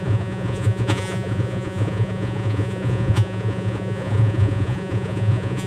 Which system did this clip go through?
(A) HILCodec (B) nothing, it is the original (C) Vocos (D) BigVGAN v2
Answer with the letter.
C